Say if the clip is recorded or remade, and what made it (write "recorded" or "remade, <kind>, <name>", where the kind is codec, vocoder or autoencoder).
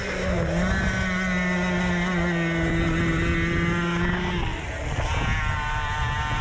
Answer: recorded